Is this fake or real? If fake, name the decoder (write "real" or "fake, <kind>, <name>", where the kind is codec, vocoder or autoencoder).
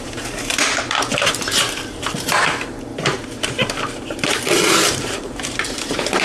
fake, vocoder, BigVGAN v2